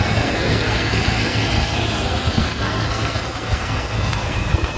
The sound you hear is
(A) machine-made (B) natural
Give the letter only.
A